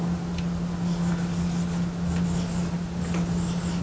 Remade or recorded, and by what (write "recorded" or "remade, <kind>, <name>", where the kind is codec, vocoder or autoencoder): recorded